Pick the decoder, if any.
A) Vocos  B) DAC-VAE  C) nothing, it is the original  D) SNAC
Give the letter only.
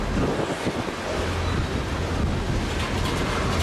C